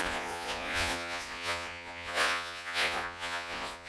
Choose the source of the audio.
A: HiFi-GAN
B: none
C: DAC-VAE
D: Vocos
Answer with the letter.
D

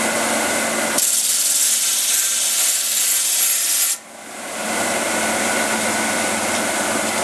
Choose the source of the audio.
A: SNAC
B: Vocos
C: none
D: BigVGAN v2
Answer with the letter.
C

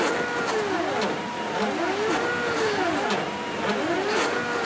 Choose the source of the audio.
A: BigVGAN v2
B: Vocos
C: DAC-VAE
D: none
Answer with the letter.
D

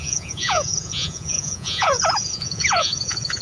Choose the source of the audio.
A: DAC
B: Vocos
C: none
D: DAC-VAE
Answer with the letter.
B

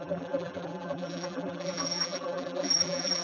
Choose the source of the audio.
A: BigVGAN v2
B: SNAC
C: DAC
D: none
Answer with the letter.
A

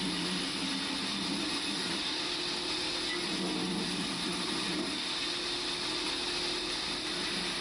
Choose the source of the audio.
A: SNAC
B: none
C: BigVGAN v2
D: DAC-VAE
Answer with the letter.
B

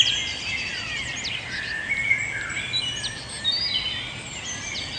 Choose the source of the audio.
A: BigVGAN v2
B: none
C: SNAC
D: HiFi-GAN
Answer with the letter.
B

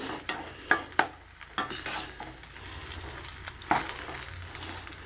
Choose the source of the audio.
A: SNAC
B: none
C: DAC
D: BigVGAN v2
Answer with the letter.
B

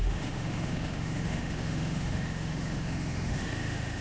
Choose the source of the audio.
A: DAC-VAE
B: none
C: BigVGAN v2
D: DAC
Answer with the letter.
A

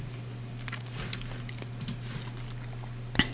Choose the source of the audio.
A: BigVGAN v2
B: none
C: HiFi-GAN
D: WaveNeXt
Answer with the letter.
B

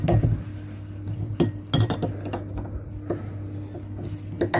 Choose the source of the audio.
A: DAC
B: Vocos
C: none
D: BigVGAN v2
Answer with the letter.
C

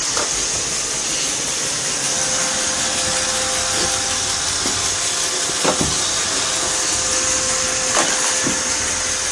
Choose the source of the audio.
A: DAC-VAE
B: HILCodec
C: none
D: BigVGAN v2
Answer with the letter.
C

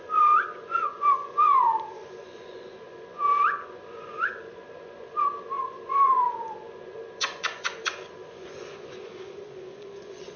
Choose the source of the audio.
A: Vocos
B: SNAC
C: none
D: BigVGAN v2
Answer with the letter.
A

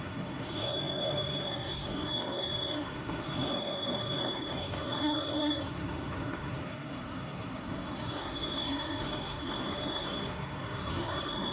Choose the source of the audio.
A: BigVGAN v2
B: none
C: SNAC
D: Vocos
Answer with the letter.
C